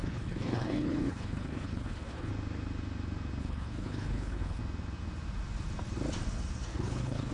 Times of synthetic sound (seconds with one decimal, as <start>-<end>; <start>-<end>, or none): 0.0-2.3; 3.4-4.6; 6.7-7.3